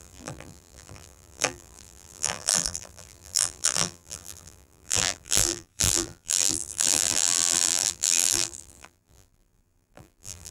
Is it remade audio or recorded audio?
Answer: remade